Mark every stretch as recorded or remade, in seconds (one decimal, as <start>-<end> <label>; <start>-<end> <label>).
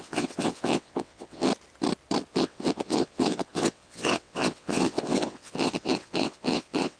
0.0-1.5 remade; 1.5-2.3 recorded; 2.3-7.0 remade